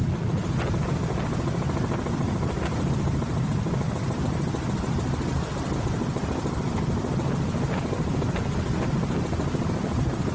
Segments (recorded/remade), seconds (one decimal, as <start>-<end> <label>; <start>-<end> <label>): 0.0-10.3 recorded